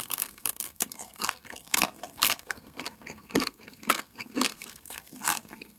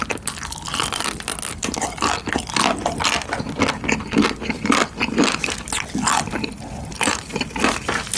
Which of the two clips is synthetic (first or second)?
first